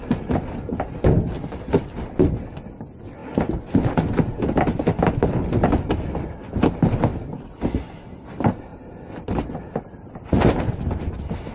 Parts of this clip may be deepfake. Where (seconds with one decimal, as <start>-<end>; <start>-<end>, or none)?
8.7-10.1